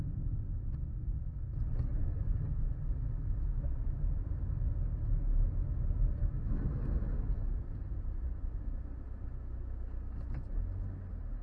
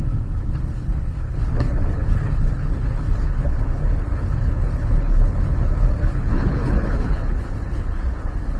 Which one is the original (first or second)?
first